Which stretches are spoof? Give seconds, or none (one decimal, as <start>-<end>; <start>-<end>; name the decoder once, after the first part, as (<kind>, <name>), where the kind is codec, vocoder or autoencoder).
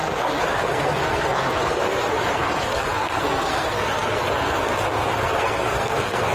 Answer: 0.0-6.3 (codec, SNAC)